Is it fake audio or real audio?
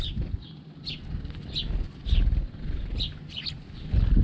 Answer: real